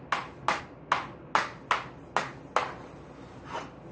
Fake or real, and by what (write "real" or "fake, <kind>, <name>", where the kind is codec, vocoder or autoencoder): real